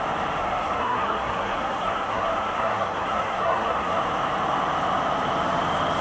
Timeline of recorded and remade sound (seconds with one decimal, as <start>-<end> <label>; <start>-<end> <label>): 0.0-0.4 recorded; 0.4-4.0 remade; 4.0-6.0 recorded

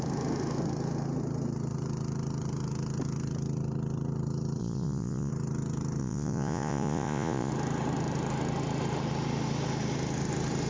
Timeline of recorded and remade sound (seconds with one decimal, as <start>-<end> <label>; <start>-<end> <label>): 0.0-4.6 recorded; 4.6-5.3 remade; 5.3-6.0 recorded; 6.0-7.5 remade; 7.5-10.7 recorded

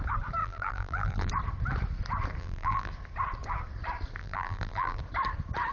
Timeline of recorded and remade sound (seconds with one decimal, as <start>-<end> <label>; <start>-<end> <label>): 0.0-0.4 recorded; 0.4-1.3 remade; 1.3-2.4 recorded; 2.4-2.9 remade; 2.9-4.2 recorded; 4.2-5.0 remade; 5.0-5.7 recorded

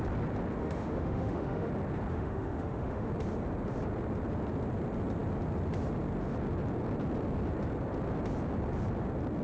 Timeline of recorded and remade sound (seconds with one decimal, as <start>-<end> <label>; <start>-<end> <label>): 0.0-0.6 recorded; 0.6-1.7 remade; 1.7-2.1 recorded; 2.1-3.1 remade; 3.1-9.4 recorded

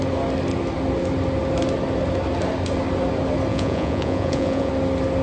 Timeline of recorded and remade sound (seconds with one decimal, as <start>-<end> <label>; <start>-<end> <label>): 0.0-3.5 recorded; 3.5-4.7 remade; 4.7-5.2 recorded

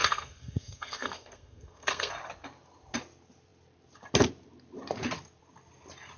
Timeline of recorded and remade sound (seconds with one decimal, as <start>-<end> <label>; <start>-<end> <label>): 0.0-2.1 remade; 2.1-6.2 recorded